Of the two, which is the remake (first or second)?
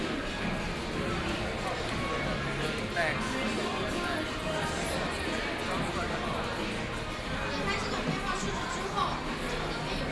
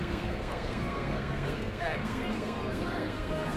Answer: second